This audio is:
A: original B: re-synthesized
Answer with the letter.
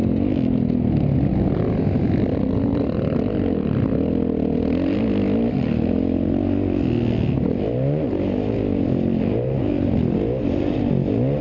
A